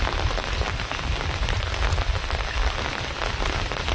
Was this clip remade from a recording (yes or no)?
no